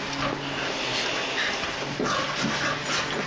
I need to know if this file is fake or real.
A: real